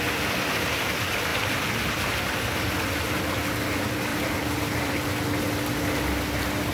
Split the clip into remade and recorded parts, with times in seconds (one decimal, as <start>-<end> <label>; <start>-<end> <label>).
0.0-4.1 recorded; 4.1-4.9 remade; 4.9-6.7 recorded